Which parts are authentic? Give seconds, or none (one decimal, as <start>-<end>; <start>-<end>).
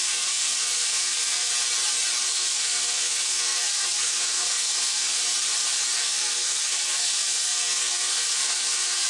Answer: 1.5-2.2; 5.2-6.0